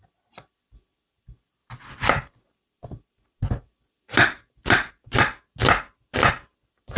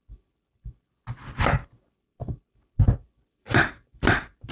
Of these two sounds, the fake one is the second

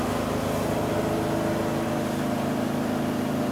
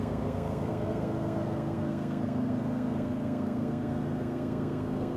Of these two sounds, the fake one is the second